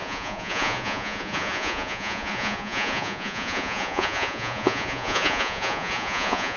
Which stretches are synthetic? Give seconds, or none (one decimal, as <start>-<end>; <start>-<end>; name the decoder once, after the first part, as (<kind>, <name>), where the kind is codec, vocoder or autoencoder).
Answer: 0.0-6.6 (vocoder, Vocos)